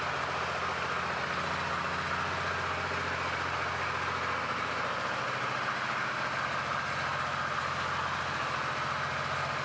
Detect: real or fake real